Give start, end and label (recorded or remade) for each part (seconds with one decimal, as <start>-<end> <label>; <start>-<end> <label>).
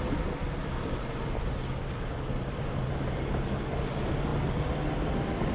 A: 0.0-5.5 recorded